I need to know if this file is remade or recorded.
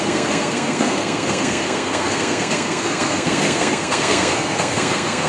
remade